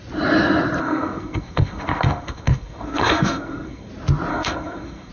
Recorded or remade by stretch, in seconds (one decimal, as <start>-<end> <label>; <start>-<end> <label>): 0.0-0.8 recorded; 0.8-3.9 remade; 3.9-4.3 recorded; 4.3-5.1 remade